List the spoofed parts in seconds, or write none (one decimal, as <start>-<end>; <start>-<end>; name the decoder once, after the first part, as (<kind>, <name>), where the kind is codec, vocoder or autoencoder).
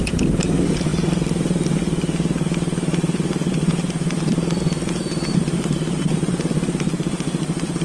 none